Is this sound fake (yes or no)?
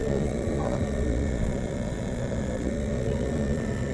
yes